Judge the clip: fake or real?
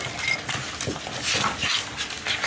real